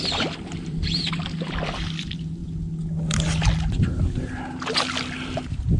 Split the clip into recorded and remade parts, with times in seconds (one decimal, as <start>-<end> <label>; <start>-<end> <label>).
0.0-2.4 remade; 2.4-5.0 recorded; 5.0-5.8 remade

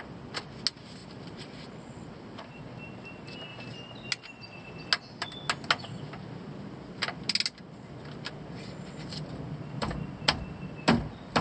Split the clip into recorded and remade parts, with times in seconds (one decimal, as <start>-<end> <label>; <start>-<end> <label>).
0.0-1.0 recorded; 1.0-2.6 remade; 2.6-11.4 recorded

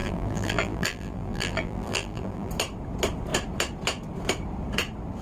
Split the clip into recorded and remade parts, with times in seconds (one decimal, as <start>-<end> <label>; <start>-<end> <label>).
0.0-2.5 remade; 2.5-5.2 recorded